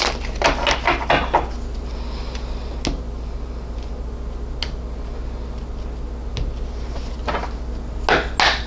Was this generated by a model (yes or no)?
no